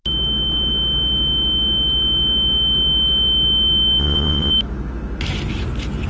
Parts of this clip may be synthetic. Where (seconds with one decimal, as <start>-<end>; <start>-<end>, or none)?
4.0-4.5